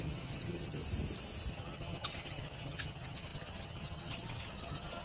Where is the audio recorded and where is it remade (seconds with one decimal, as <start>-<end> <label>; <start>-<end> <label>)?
0.0-0.8 remade; 0.8-1.5 recorded; 1.5-5.0 remade